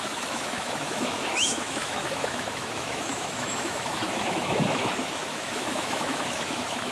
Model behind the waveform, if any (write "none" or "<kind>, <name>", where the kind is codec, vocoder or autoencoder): autoencoder, DAC-VAE